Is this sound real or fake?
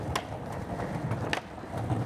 real